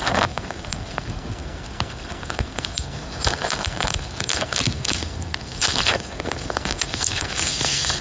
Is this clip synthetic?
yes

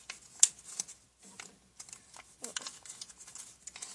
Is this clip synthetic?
no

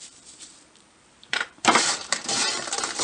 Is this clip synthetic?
yes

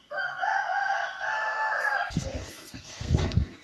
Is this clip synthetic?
yes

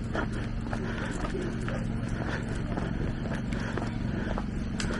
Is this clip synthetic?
no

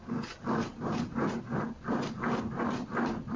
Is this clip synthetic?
no